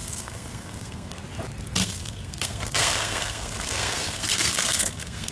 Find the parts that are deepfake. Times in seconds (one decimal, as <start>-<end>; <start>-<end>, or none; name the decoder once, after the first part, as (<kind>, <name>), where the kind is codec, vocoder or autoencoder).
0.0-1.2 (codec, SNAC); 1.8-5.3